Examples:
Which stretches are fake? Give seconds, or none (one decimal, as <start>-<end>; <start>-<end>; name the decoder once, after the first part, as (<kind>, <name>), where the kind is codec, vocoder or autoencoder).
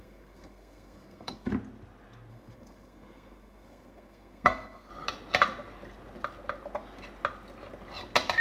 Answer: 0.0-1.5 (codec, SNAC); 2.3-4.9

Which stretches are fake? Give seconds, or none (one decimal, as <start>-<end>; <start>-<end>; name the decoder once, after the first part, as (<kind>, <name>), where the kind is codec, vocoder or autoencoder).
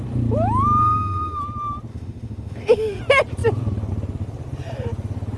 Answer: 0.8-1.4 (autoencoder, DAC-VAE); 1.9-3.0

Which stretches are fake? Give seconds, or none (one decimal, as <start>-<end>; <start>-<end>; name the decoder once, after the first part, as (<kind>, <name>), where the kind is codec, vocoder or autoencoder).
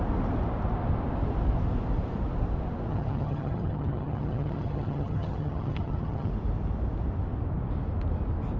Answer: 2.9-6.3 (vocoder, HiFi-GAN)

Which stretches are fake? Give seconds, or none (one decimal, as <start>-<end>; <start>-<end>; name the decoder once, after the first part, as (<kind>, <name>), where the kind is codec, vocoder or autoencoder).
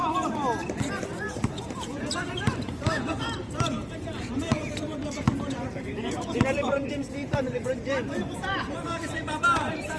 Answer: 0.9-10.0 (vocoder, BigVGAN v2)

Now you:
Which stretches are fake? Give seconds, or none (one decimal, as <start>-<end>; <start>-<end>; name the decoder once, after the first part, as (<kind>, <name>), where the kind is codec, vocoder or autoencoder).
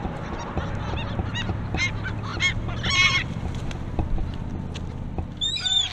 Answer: none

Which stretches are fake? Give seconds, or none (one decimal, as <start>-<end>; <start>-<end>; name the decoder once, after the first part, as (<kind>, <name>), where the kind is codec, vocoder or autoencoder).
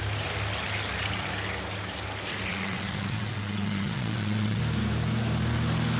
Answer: 2.5-4.6 (vocoder, WaveNeXt)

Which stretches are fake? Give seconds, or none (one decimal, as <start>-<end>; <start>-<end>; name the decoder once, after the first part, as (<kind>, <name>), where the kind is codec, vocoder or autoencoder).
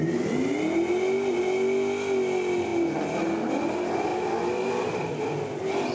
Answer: none